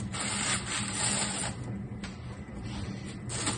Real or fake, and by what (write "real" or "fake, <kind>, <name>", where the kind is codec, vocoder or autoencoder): real